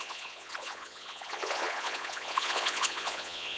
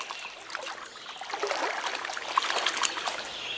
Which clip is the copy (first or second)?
first